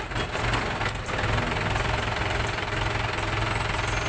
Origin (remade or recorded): recorded